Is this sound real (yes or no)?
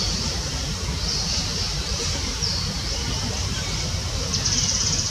no